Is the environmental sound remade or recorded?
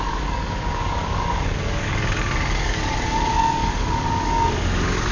remade